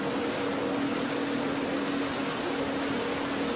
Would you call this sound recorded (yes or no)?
yes